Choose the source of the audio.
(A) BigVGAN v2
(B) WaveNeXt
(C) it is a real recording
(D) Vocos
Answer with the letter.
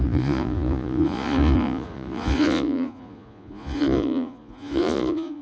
D